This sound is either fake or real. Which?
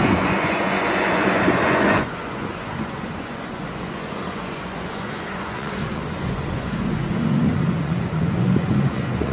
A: fake